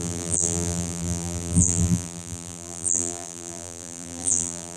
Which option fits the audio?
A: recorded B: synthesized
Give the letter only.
B